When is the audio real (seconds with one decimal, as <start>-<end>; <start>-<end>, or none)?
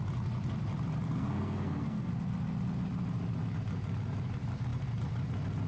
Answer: 0.0-1.1; 2.1-5.7